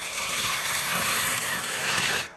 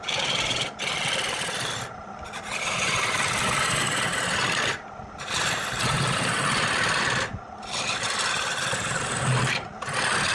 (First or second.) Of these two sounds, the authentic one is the second